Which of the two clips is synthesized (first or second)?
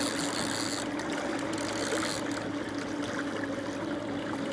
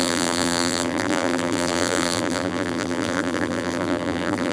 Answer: second